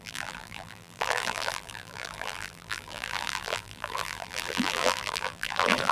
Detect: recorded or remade remade